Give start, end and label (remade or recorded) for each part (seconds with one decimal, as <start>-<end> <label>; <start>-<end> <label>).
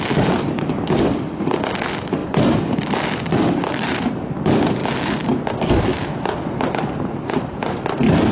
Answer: 0.0-2.2 remade; 2.2-2.8 recorded; 2.8-5.9 remade; 5.9-7.4 recorded; 7.4-8.3 remade